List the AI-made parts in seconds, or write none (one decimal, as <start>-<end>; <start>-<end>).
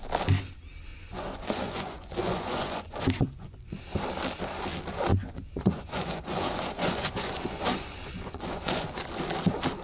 0.9-3.8; 5.1-9.1